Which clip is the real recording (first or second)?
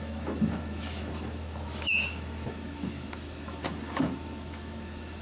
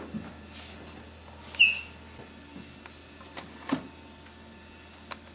second